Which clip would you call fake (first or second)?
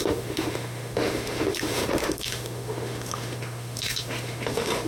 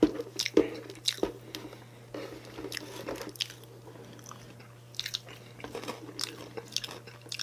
first